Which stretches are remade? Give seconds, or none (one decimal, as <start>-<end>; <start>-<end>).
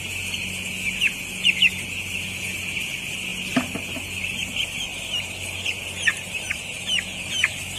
6.1-7.8